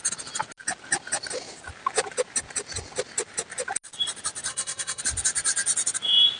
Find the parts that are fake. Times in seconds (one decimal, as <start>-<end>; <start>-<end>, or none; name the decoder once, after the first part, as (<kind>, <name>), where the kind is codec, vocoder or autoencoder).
4.5-5.0 (codec, SNAC)